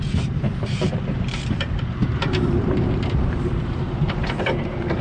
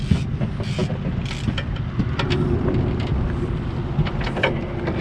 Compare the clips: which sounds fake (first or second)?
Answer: first